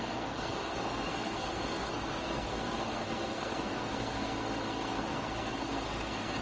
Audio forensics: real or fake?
fake